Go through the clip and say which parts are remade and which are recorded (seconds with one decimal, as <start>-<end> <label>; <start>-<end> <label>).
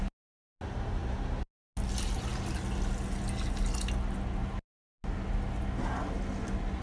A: 0.0-6.8 recorded